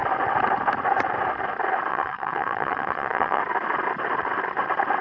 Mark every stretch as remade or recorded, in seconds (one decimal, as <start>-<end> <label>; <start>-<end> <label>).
0.0-1.9 recorded; 1.9-3.4 remade; 3.4-5.0 recorded